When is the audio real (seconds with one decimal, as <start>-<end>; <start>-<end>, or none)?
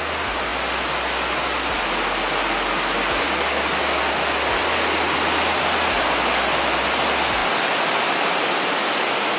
0.0-9.4